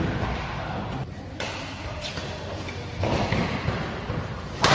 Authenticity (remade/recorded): recorded